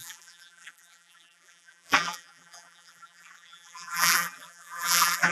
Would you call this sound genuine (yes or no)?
no